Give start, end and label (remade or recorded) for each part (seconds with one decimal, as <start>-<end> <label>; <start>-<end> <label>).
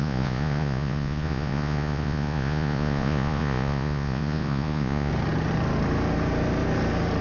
0.0-5.1 remade; 5.1-7.2 recorded